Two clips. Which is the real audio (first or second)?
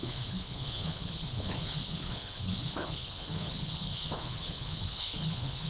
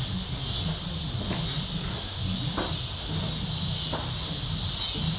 second